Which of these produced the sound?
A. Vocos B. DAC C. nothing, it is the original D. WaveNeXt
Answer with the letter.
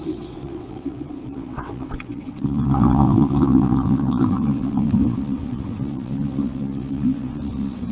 D